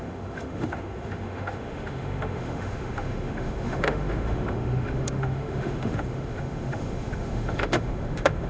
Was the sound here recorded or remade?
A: remade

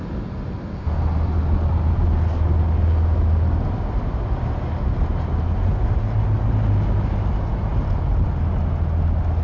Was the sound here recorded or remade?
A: recorded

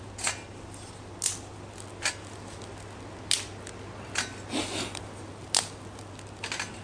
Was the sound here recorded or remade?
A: recorded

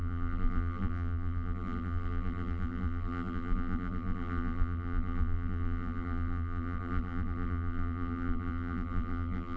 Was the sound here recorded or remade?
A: remade